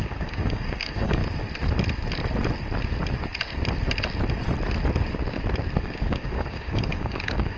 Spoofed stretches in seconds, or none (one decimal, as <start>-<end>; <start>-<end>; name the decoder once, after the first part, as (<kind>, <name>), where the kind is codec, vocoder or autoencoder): 0.0-1.2 (codec, DAC); 5.8-7.6